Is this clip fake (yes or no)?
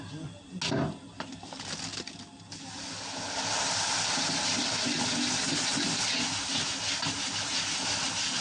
no